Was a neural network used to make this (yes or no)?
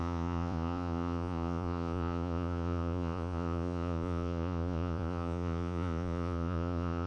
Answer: yes